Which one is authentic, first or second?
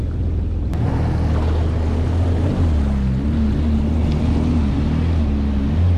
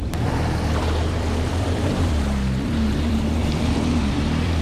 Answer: first